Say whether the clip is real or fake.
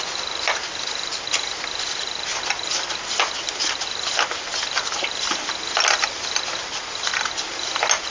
real